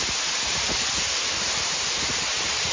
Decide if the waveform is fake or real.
real